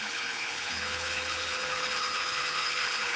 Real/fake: fake